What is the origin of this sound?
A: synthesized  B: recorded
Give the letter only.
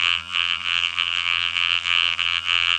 A